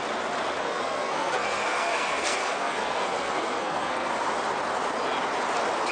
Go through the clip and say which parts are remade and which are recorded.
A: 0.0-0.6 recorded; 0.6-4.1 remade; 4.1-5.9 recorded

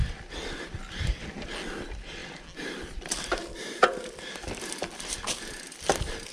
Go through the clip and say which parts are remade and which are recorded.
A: 0.0-6.3 recorded

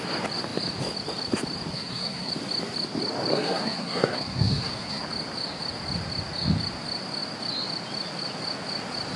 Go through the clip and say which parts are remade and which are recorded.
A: 0.0-1.7 recorded; 1.7-2.3 remade; 2.3-3.3 recorded; 3.3-5.0 remade; 5.0-9.2 recorded